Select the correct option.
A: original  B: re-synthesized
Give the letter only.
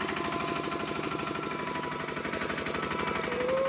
A